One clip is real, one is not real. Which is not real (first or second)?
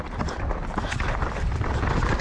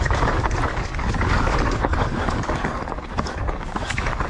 second